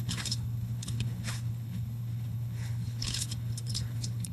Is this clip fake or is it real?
fake